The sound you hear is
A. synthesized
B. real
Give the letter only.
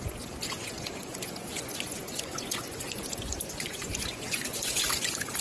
A